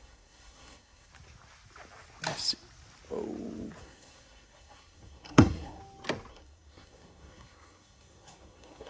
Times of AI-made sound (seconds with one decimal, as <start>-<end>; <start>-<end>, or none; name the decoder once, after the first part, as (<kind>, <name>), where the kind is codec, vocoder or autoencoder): 0.0-1.1 (codec, SNAC); 3.8-5.8; 6.3-8.9